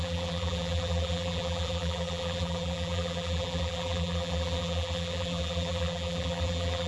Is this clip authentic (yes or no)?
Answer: no